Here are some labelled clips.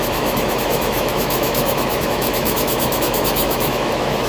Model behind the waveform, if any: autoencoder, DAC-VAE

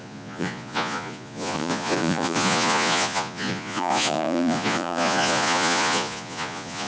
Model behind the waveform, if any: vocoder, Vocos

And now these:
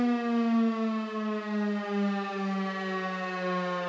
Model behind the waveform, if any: none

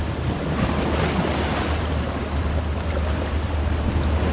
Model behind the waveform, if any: none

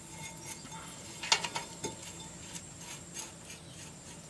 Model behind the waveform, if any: none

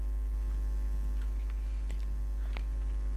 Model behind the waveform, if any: none